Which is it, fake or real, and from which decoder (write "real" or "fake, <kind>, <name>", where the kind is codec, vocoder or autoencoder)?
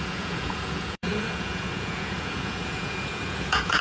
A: fake, vocoder, Vocos